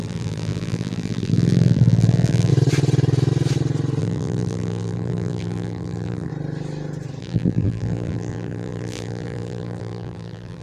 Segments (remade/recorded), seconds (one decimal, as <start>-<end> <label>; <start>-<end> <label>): 0.0-2.5 remade; 2.5-4.0 recorded; 4.0-6.3 remade; 6.3-7.2 recorded; 7.2-10.6 remade